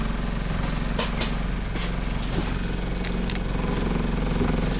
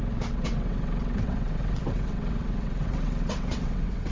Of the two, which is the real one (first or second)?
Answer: first